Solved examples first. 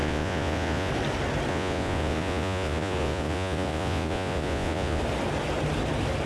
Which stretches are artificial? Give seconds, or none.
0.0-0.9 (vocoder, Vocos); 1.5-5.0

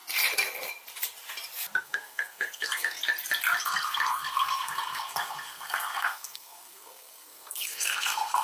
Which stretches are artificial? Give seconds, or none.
1.8-3.0 (codec, SNAC); 3.6-8.4

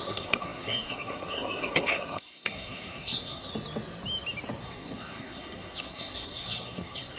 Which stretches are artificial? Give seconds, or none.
0.0-3.5 (codec, SNAC); 4.6-7.2

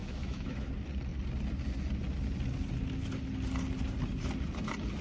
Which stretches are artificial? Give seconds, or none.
0.0-0.7 (autoencoder, DAC-VAE)